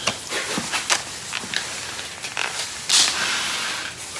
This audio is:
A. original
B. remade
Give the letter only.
A